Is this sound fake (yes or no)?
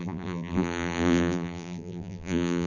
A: yes